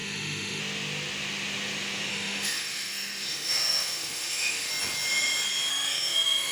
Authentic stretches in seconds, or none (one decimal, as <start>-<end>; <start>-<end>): 0.6-2.1; 4.7-5.7